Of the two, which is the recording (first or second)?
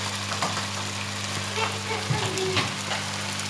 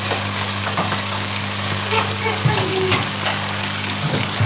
first